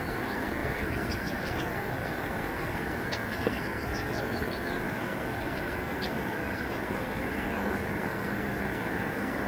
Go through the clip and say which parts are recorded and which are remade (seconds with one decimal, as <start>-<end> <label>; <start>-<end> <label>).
0.0-9.5 remade